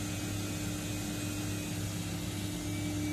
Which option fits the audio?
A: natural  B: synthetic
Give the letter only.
A